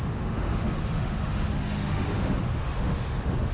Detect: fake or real fake